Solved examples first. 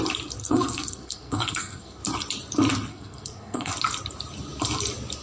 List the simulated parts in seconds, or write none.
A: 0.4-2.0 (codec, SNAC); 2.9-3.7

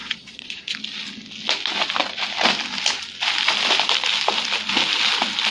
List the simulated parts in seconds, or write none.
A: 0.0-0.6 (vocoder, Vocos)

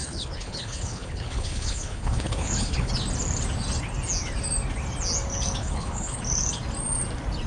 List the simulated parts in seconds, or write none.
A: 0.0-2.9 (codec, HILCodec); 5.6-6.2

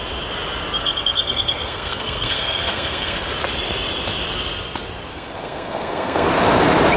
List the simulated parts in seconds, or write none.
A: 0.8-3.3 (codec, SNAC); 5.1-6.3

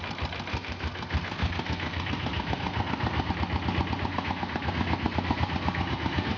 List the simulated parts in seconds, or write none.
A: 0.5-3.3 (codec, SNAC); 4.1-6.4

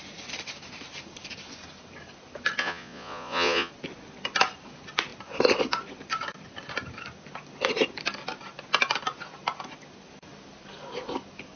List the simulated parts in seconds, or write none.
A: 2.6-3.7 (vocoder, Vocos)

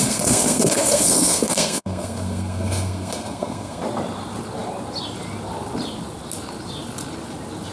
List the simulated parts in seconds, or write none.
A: 0.0-3.8 (codec, SNAC)

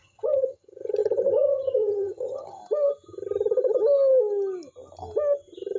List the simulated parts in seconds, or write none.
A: 0.0-2.6 (vocoder, HiFi-GAN)